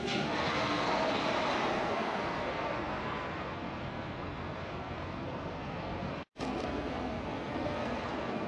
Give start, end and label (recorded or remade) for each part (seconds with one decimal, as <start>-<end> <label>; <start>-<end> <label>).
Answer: 0.0-1.2 remade; 1.2-1.7 recorded; 1.7-8.5 remade